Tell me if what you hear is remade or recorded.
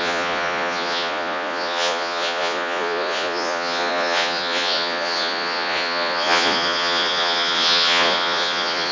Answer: remade